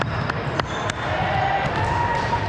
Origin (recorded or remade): recorded